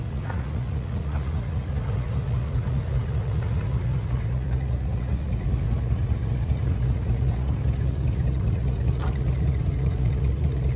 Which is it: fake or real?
fake